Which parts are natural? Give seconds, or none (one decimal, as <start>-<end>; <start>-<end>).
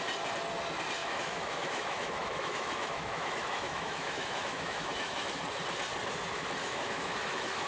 0.0-1.0; 5.4-6.6